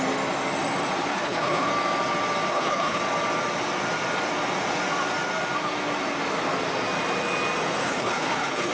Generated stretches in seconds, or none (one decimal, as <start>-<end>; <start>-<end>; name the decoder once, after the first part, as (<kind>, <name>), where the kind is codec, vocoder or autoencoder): 1.1-1.7 (codec, HILCodec); 2.5-3.0; 7.8-8.7